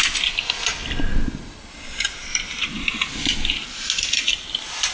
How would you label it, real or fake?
real